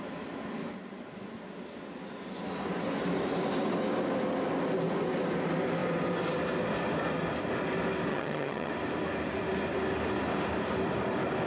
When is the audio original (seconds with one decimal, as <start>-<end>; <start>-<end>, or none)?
0.0-8.1; 8.7-11.5

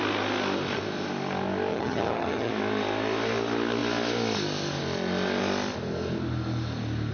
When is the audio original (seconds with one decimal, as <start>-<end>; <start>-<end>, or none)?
0.0-1.7; 2.5-7.1

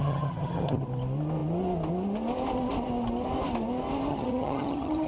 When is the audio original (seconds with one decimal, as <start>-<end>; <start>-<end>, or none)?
0.8-4.1

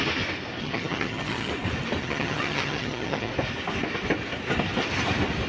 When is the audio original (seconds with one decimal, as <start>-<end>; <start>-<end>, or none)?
0.0-0.6; 1.5-2.0; 3.3-5.5

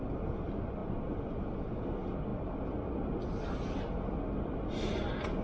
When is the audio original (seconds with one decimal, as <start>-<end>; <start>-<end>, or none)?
0.0-5.4

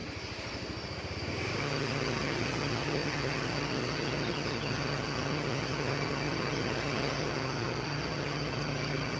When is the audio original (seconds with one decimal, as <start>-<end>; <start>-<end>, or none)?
0.0-1.6

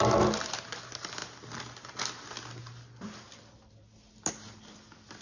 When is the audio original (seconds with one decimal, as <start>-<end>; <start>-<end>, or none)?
0.0-5.2